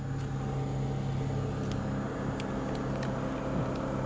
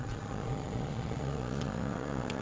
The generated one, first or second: second